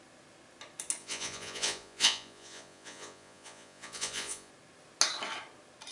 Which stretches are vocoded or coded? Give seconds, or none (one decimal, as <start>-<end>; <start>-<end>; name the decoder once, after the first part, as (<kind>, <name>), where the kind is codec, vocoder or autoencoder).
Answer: 1.0-4.5 (vocoder, Vocos)